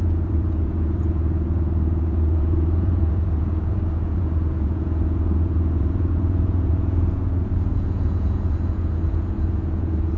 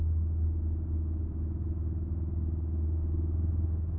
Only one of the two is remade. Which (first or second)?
first